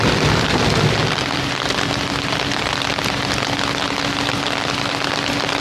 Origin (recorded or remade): recorded